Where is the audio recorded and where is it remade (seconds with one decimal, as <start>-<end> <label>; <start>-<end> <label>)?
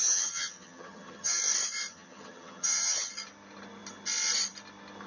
0.0-1.4 remade; 1.4-1.9 recorded; 1.9-3.1 remade; 3.1-5.1 recorded